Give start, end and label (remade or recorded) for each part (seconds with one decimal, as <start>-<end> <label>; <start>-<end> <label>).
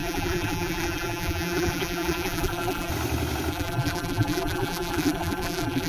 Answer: 0.0-2.9 remade; 2.9-3.5 recorded; 3.5-5.9 remade